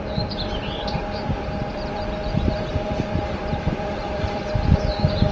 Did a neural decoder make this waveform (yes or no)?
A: yes